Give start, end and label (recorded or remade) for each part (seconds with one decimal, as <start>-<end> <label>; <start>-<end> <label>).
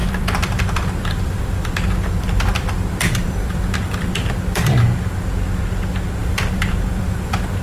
0.0-4.6 remade; 4.6-6.2 recorded; 6.2-7.6 remade